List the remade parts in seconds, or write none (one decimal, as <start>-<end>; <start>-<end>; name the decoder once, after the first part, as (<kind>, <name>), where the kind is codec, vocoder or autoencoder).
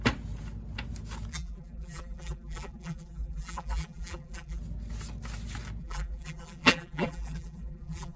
1.3-4.6 (vocoder, BigVGAN v2); 5.8-8.2